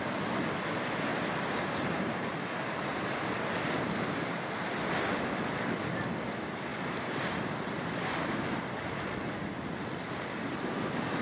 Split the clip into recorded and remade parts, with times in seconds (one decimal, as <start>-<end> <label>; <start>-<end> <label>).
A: 0.0-1.1 recorded; 1.1-3.2 remade; 3.2-6.7 recorded; 6.7-7.2 remade; 7.2-11.2 recorded